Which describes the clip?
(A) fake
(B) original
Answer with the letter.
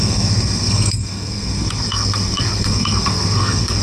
A